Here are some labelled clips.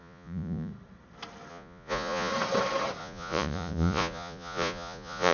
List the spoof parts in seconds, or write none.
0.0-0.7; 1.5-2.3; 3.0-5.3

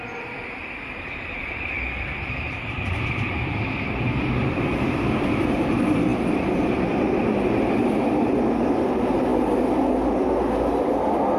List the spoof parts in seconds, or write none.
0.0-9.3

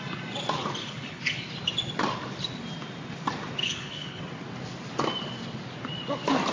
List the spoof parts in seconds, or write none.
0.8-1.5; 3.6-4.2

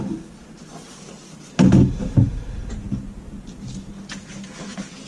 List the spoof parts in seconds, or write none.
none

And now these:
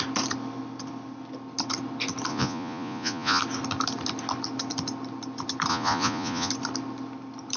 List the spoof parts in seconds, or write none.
2.3-3.4; 5.7-6.5